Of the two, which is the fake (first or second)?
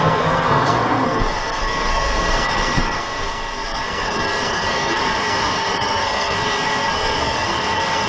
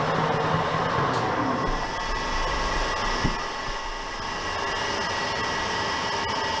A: first